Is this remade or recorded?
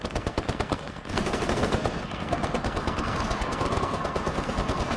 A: remade